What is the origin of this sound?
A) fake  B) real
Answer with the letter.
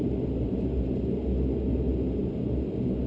B